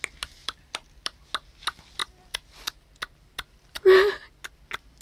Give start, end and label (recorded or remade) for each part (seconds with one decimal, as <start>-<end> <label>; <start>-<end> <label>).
0.0-0.4 recorded; 0.4-1.2 remade; 1.2-5.0 recorded